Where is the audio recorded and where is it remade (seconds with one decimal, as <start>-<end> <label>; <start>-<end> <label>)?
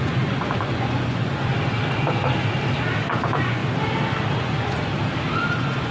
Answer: 0.0-1.5 remade; 1.5-3.1 recorded; 3.1-3.6 remade; 3.6-4.4 recorded; 4.4-4.9 remade; 4.9-5.5 recorded; 5.5-5.9 remade